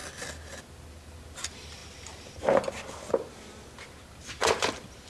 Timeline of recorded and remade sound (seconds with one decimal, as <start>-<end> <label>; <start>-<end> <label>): 0.0-5.1 recorded

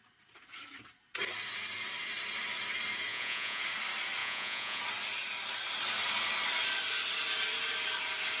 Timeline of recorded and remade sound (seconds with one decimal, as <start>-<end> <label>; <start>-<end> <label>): 0.0-3.1 recorded; 3.1-3.6 remade; 3.6-4.2 recorded; 4.2-4.8 remade; 4.8-8.4 recorded

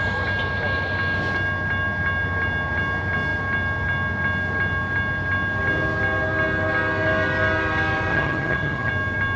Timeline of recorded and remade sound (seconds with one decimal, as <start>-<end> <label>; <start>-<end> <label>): 0.0-8.1 recorded; 8.1-8.9 remade; 8.9-9.4 recorded

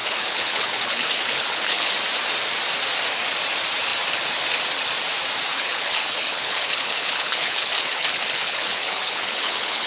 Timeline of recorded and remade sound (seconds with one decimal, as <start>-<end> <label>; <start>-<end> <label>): 0.0-1.9 remade; 1.9-5.5 recorded; 5.5-9.9 remade

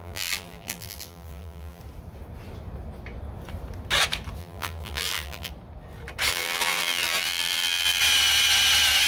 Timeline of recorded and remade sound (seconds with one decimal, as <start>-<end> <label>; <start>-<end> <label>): 0.0-1.8 remade; 1.8-4.4 recorded; 4.4-5.5 remade; 5.5-6.3 recorded; 6.3-8.0 remade; 8.0-9.1 recorded

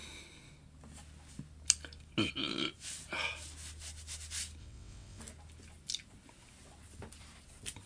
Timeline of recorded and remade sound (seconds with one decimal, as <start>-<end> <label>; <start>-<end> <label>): 0.0-4.6 recorded; 4.6-5.2 remade; 5.2-7.9 recorded